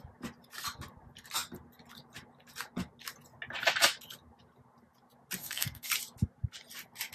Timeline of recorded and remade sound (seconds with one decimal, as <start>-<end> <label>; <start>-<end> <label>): 0.0-5.4 recorded; 5.4-5.9 remade; 5.9-7.1 recorded